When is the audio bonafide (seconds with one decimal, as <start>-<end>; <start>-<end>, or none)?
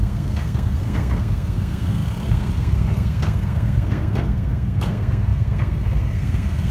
none